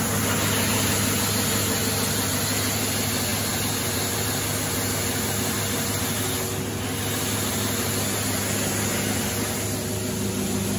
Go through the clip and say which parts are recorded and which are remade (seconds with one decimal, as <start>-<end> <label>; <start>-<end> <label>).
0.0-10.8 recorded